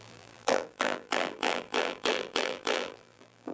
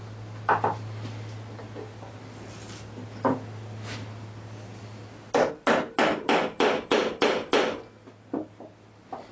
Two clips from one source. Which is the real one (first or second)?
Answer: second